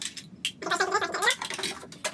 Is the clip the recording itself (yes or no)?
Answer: yes